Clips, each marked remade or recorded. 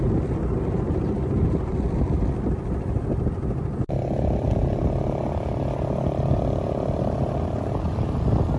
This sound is recorded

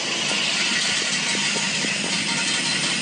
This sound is recorded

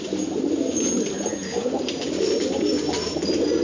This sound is recorded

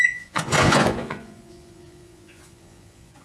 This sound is remade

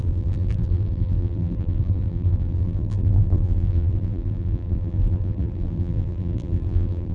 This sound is remade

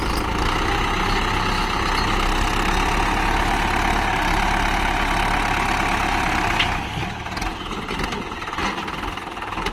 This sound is recorded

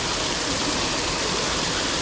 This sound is recorded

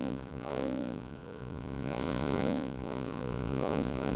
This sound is remade